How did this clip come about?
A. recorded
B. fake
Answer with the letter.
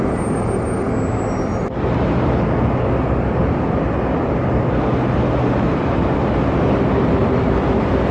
A